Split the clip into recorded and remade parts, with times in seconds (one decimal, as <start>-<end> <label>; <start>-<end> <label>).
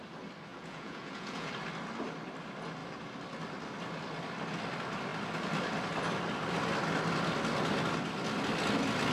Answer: 0.0-0.5 recorded; 0.5-1.5 remade; 1.5-9.1 recorded